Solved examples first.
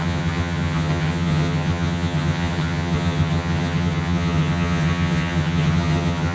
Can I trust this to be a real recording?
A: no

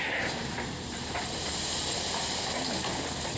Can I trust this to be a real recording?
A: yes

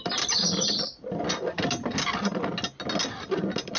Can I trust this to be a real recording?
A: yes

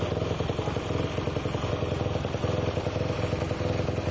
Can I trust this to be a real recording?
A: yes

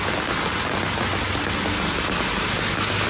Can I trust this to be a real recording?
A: yes